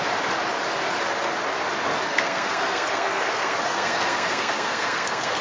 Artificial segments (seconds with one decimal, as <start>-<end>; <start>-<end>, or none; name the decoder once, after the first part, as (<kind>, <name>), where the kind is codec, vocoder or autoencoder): 2.1-5.4 (codec, SNAC)